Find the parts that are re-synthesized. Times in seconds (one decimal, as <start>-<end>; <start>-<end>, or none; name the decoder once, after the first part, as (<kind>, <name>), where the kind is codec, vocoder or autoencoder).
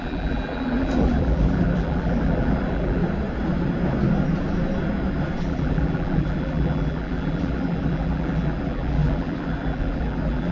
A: 0.0-3.0 (vocoder, BigVGAN v2); 5.4-10.5